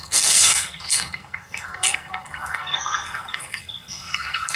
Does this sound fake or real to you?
fake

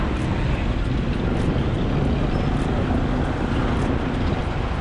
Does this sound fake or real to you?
real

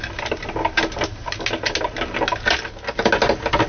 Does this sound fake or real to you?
real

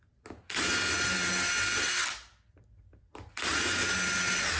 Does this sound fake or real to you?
real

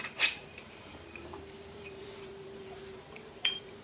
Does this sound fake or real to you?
fake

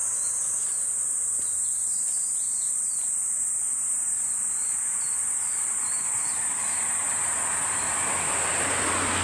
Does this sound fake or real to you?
real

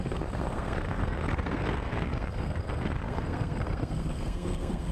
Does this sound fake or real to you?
fake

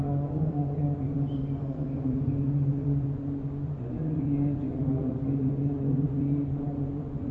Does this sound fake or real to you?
fake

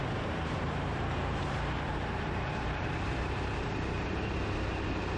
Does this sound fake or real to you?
fake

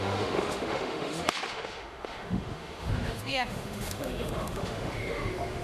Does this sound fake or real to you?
fake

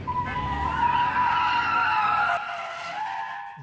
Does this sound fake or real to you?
real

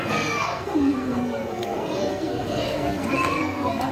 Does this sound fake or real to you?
fake